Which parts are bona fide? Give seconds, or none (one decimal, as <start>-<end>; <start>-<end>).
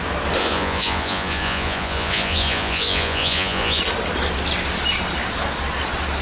0.0-0.4; 3.8-6.2